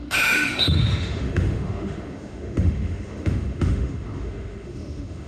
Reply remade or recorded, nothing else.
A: remade